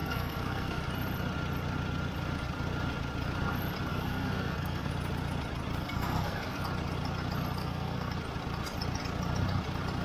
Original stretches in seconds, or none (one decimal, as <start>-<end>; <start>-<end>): 0.8-3.9; 4.9-5.8; 6.6-7.6; 8.1-10.0